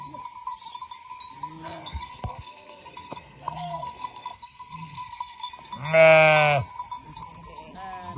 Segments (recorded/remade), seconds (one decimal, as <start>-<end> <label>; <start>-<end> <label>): 0.0-1.8 recorded; 1.8-5.5 remade; 5.5-8.2 recorded